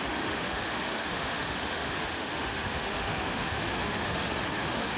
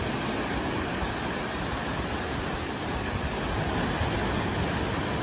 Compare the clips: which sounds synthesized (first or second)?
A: first